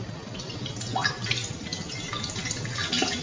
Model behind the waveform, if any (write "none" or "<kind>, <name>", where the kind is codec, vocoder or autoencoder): none